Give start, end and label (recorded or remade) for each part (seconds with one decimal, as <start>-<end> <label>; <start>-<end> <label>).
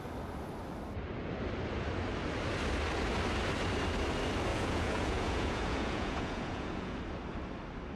0.0-4.5 recorded; 4.5-7.0 remade; 7.0-8.0 recorded